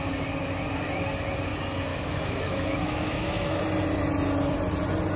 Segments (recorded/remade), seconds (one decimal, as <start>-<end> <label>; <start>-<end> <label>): 0.0-1.9 recorded; 1.9-3.6 remade; 3.6-5.2 recorded